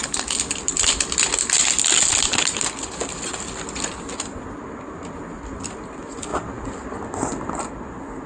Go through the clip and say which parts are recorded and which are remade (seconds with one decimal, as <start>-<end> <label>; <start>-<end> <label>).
0.0-8.3 recorded

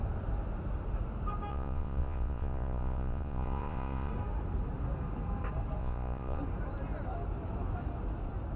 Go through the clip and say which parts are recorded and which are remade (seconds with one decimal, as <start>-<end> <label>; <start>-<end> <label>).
0.0-1.5 recorded; 1.5-4.1 remade; 4.1-5.8 recorded; 5.8-6.4 remade; 6.4-8.6 recorded

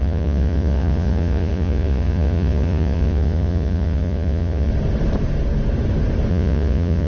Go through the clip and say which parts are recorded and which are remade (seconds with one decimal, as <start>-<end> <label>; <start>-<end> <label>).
0.0-4.7 remade; 4.7-6.3 recorded; 6.3-7.1 remade

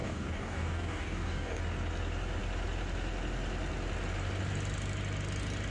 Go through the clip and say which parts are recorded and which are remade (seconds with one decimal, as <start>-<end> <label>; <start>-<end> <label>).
0.0-1.6 remade; 1.6-5.7 recorded

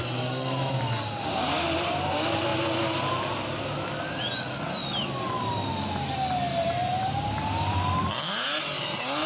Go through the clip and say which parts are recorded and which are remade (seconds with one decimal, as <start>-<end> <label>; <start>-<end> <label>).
0.0-4.8 recorded; 4.8-5.5 remade; 5.5-6.5 recorded; 6.5-8.1 remade; 8.1-9.3 recorded

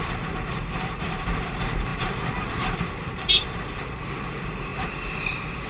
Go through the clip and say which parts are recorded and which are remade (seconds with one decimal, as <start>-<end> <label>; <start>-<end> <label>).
0.0-5.7 remade